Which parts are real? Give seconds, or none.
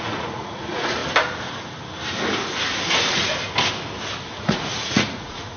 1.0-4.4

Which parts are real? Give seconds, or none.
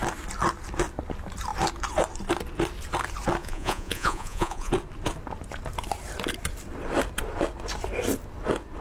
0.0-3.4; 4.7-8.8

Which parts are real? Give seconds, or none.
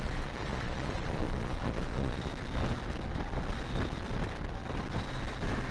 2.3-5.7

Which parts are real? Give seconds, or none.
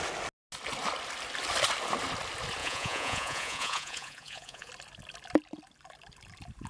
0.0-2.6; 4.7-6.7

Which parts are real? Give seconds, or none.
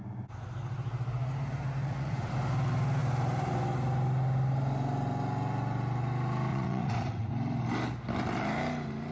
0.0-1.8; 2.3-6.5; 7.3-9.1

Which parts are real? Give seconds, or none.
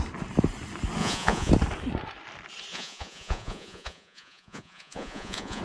0.0-1.0; 1.5-2.7